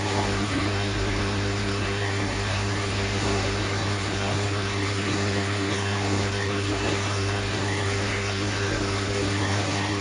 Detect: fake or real fake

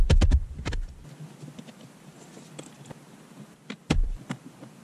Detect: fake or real fake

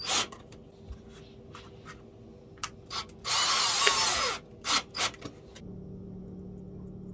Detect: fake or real real